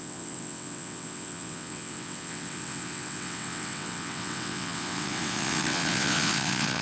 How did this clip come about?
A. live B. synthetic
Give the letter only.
B